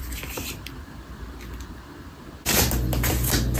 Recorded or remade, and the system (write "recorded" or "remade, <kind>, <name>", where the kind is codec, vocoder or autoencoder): recorded